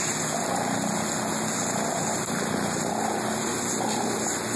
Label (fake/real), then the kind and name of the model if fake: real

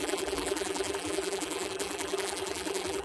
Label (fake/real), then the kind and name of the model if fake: fake, vocoder, BigVGAN v2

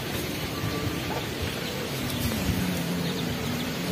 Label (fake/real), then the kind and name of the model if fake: fake, vocoder, BigVGAN v2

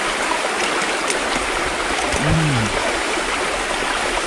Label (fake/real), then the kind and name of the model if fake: real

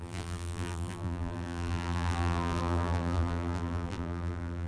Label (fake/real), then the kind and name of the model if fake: fake, vocoder, BigVGAN v2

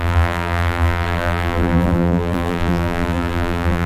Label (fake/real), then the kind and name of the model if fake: fake, vocoder, BigVGAN v2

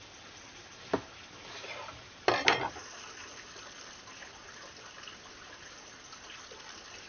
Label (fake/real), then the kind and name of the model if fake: real